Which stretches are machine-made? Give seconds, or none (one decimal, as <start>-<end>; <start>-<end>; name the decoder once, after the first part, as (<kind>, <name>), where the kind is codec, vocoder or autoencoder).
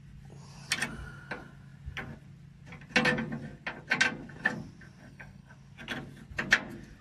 5.0-5.5 (codec, SNAC)